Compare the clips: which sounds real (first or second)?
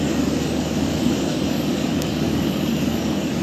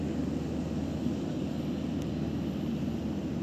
second